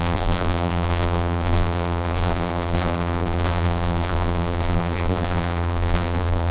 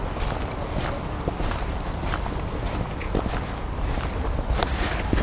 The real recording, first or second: second